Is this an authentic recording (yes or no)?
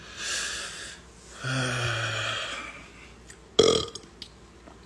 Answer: yes